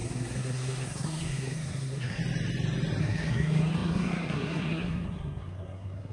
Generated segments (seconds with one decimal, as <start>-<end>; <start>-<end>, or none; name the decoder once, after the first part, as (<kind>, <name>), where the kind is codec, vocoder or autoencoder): 0.0-2.2 (codec, SNAC); 3.0-6.1